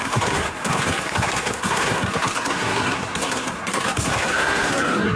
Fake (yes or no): yes